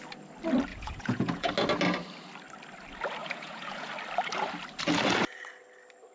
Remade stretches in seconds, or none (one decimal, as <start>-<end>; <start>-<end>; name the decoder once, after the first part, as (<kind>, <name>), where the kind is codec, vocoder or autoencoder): 0.7-1.5 (vocoder, Vocos); 3.2-3.9